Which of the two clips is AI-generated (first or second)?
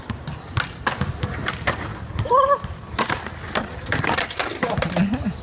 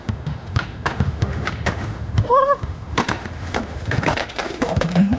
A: second